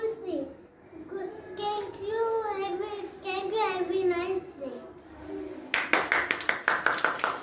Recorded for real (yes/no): yes